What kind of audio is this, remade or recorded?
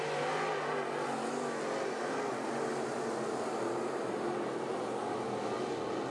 recorded